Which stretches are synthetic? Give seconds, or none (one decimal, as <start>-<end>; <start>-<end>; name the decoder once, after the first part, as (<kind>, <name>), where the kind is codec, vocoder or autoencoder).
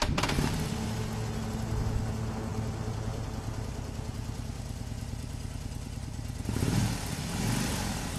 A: 2.5-7.3 (vocoder, BigVGAN v2)